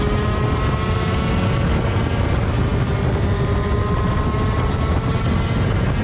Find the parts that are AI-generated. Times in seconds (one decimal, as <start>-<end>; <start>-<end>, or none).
none

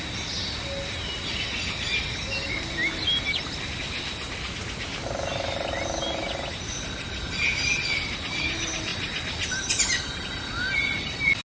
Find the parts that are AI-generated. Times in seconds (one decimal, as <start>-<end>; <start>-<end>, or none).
none